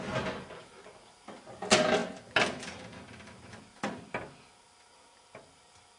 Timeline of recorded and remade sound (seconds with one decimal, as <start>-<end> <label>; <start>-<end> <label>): 0.0-6.0 recorded